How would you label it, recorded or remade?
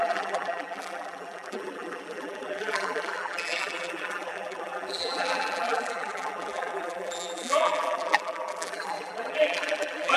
remade